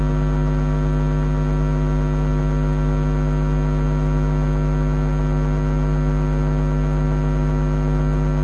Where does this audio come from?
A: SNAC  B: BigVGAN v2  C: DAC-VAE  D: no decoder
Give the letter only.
D